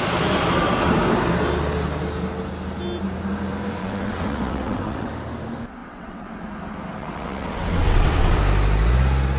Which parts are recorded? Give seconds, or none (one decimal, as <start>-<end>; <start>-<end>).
0.0-3.8; 5.1-5.8; 6.3-7.0; 8.4-9.4